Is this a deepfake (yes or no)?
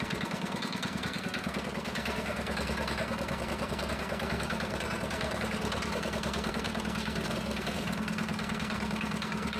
yes